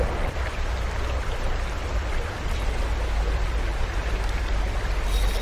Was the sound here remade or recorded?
remade